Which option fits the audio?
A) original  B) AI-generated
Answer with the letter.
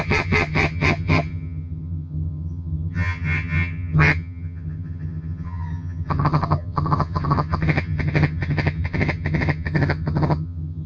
B